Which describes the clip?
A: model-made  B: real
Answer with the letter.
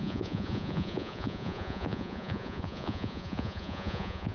A